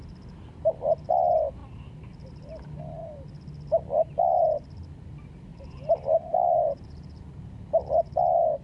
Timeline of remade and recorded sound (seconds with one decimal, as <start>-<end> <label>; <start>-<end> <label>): 0.0-5.5 recorded; 5.5-7.2 remade; 7.2-8.6 recorded